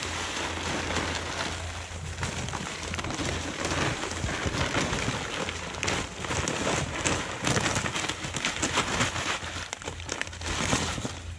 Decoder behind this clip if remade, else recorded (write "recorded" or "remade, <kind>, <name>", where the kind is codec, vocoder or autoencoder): recorded